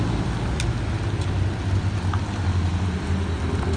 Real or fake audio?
real